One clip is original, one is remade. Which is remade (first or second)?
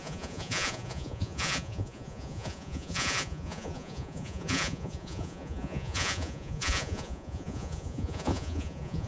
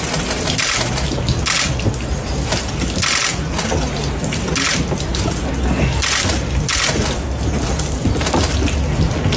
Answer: first